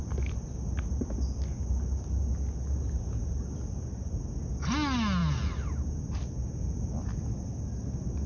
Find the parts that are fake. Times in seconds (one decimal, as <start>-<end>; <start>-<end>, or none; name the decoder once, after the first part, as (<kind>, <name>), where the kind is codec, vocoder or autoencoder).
none